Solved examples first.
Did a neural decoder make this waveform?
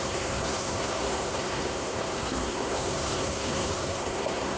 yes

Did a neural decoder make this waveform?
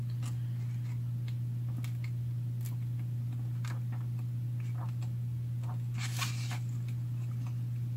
no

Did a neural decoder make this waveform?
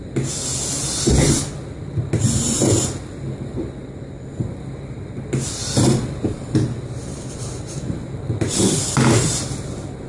no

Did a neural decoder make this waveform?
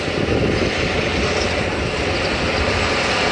no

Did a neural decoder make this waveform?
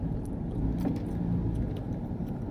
no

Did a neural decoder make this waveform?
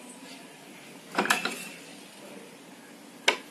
no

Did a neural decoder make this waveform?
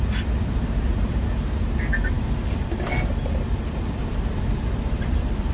yes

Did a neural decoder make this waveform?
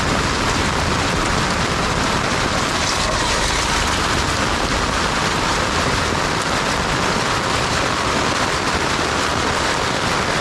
yes